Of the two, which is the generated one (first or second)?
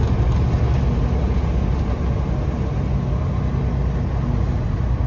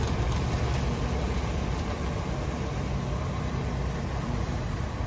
second